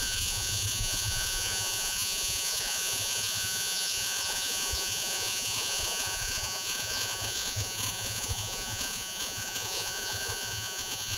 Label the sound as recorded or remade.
remade